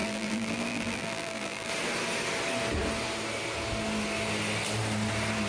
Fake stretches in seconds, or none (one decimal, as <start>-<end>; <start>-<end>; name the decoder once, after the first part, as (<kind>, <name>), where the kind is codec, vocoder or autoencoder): 0.0-1.7 (vocoder, BigVGAN v2)